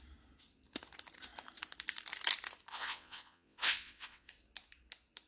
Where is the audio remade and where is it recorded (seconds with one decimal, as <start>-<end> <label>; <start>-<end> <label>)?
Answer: 0.0-2.7 recorded; 2.7-4.3 remade; 4.3-5.3 recorded